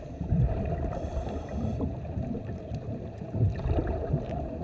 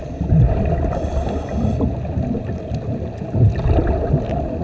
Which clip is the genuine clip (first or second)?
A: second